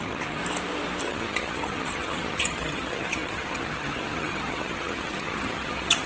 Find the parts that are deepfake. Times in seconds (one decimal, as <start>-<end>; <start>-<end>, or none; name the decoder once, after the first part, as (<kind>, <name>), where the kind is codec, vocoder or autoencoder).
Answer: 0.0-0.4 (vocoder, HiFi-GAN); 1.0-6.1